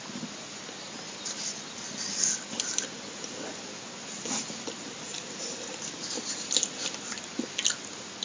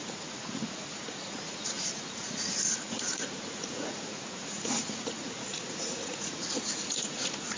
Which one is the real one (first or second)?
first